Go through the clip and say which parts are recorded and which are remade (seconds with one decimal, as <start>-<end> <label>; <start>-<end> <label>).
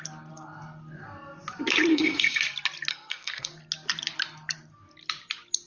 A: 0.0-1.9 recorded; 1.9-2.4 remade; 2.4-2.9 recorded; 2.9-3.5 remade; 3.5-5.7 recorded